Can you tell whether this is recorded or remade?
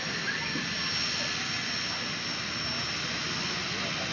recorded